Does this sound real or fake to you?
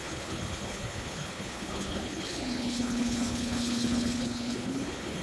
fake